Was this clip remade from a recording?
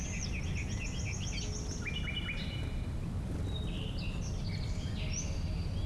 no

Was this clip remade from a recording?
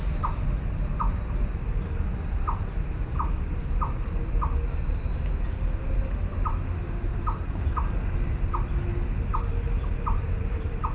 no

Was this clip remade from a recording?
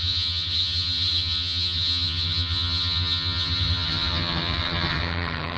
yes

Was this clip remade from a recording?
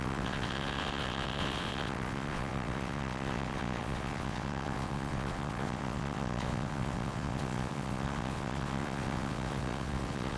yes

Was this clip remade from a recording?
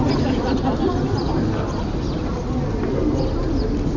no